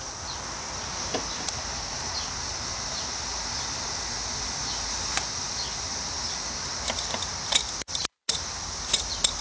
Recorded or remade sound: recorded